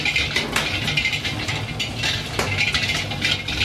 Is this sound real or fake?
real